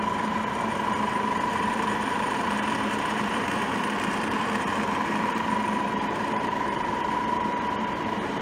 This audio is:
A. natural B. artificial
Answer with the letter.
B